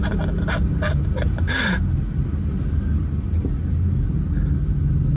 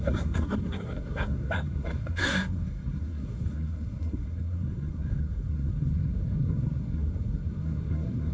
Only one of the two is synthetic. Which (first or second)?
second